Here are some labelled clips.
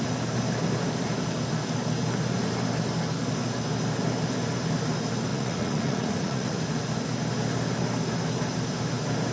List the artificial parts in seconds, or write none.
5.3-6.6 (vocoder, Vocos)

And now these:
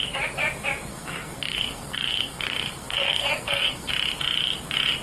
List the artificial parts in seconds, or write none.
0.9-3.9 (codec, SNAC)

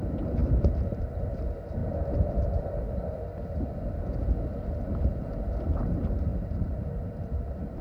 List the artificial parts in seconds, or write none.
0.0-1.8 (vocoder, BigVGAN v2); 4.7-7.8